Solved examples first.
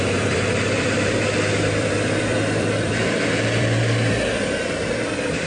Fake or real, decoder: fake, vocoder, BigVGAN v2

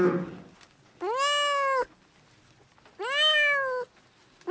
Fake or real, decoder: real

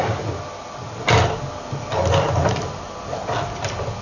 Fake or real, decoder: real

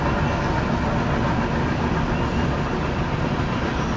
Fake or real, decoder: real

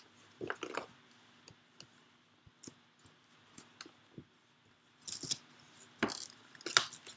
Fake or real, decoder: real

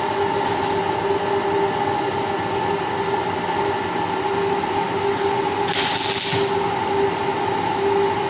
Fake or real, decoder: real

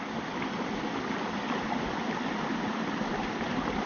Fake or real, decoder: real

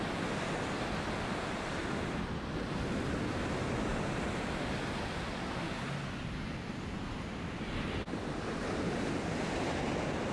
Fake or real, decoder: real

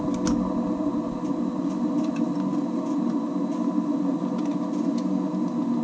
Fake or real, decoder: real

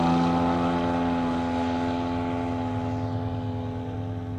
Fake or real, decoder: real